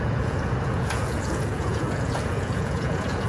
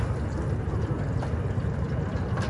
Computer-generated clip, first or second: first